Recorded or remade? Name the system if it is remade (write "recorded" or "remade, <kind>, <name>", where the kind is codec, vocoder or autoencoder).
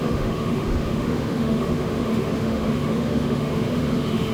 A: remade, autoencoder, DAC-VAE